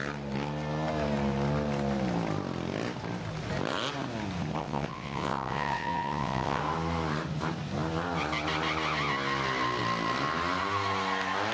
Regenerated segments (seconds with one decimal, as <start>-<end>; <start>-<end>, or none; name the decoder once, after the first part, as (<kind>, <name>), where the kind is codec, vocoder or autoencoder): 4.6-6.6 (vocoder, WaveNeXt)